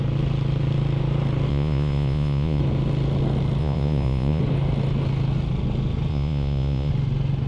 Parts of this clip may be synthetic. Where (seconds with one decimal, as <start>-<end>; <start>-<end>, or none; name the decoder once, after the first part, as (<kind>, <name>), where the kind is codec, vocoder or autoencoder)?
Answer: 1.5-2.6 (vocoder, Vocos); 3.6-4.4; 6.1-6.9

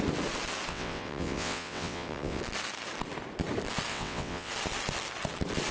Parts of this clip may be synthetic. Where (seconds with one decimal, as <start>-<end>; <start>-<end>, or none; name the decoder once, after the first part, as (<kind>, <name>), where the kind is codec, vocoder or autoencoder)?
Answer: 0.7-2.4 (vocoder, WaveNeXt); 3.9-4.5

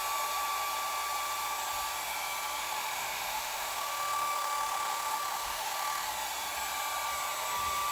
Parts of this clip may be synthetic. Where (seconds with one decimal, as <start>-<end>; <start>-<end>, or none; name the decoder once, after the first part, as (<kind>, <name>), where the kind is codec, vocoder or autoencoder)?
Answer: 2.6-6.1 (autoencoder, DAC-VAE)